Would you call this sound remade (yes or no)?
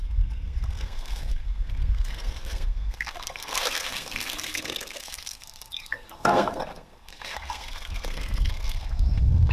yes